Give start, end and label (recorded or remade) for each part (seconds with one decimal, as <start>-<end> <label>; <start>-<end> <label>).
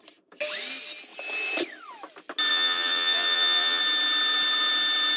0.0-2.5 recorded; 2.5-3.8 remade; 3.8-5.2 recorded